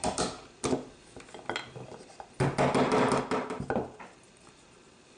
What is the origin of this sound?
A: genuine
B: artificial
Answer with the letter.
A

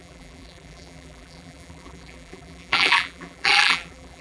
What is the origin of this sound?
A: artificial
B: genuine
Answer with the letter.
A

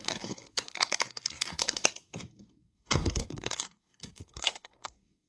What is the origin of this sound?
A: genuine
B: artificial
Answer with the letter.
B